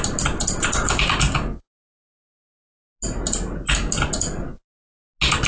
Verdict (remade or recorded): recorded